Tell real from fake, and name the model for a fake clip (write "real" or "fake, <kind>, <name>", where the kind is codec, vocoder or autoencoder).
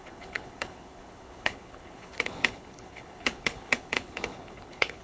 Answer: fake, codec, HILCodec